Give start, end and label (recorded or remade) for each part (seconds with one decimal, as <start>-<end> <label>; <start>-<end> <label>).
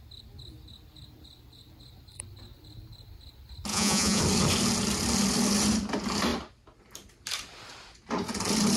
0.0-3.7 recorded; 3.7-4.2 remade; 4.2-8.8 recorded